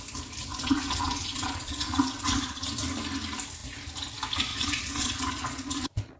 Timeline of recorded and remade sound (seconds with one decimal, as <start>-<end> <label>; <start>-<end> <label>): 0.0-0.5 recorded; 0.5-2.7 remade; 2.7-4.5 recorded; 4.5-6.2 remade